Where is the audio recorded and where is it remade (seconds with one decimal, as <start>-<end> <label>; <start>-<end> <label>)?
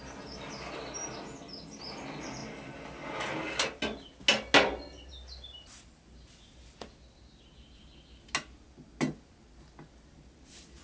0.0-10.8 recorded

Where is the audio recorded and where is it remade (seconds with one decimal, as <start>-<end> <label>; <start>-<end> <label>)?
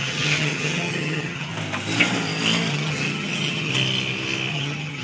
0.0-1.5 remade; 1.5-2.7 recorded; 2.7-3.7 remade; 3.7-4.5 recorded; 4.5-5.0 remade